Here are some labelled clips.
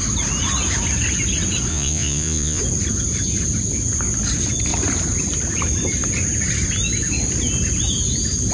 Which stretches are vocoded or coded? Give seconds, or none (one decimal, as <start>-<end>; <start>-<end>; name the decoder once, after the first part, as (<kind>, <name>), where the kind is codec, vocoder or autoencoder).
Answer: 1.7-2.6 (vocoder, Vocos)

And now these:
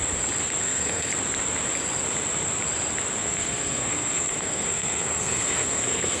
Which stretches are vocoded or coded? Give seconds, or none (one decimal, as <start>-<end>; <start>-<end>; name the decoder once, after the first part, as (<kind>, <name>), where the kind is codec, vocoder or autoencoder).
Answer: 0.6-1.1 (codec, SNAC); 3.2-6.2

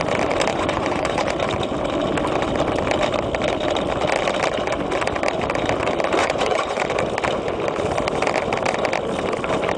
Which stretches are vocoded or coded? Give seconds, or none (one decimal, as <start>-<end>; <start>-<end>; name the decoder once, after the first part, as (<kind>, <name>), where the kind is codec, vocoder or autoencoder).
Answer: 0.5-1.3 (vocoder, Vocos); 6.2-6.8

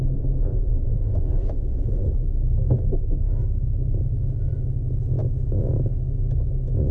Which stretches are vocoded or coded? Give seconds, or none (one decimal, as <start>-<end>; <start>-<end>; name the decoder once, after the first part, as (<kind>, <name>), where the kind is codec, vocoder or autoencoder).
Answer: 0.9-4.5 (autoencoder, DAC-VAE); 5.2-6.5

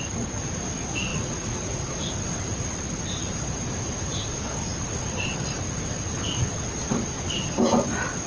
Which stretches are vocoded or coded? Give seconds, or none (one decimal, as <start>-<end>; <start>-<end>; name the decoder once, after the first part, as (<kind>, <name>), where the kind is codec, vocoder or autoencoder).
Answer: 1.1-2.0 (vocoder, Vocos)